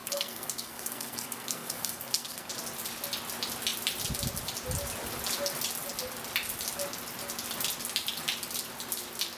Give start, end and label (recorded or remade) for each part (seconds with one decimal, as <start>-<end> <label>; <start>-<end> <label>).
0.0-2.5 remade; 2.5-9.4 recorded